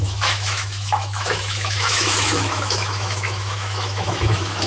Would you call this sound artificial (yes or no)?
yes